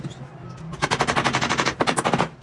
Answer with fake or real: real